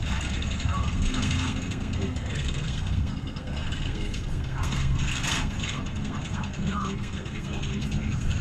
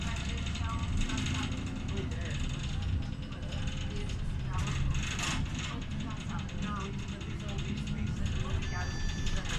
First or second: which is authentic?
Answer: second